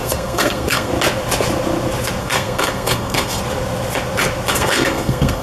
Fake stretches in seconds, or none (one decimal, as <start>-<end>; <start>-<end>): 0.0-0.9; 2.2-3.4; 4.5-5.4